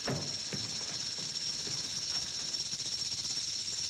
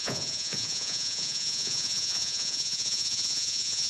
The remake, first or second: second